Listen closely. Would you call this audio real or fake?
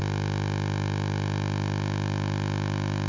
real